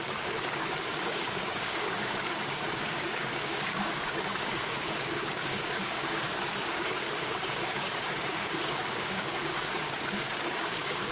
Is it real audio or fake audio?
fake